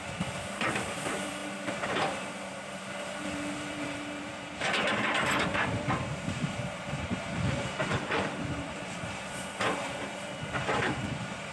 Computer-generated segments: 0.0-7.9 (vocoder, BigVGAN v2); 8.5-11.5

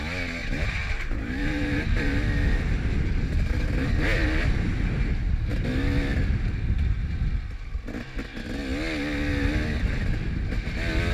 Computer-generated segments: 0.4-2.1 (vocoder, BigVGAN v2)

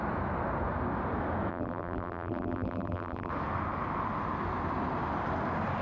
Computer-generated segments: 1.5-3.3 (vocoder, BigVGAN v2)

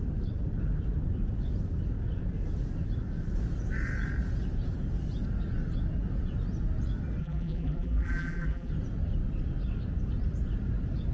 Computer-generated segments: 7.2-8.7 (vocoder, BigVGAN v2)

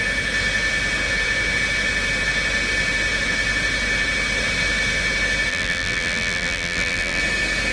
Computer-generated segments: 5.5-7.2 (vocoder, BigVGAN v2)

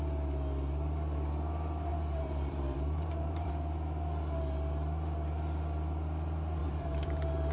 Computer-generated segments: 1.9-3.5 (vocoder, BigVGAN v2); 6.6-7.5

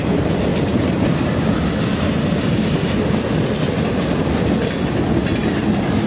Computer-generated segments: none